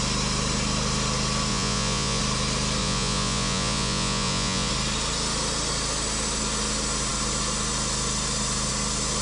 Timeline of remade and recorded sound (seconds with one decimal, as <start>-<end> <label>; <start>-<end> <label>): 0.0-1.5 recorded; 1.5-2.2 remade; 2.2-2.8 recorded; 2.8-4.7 remade; 4.7-9.2 recorded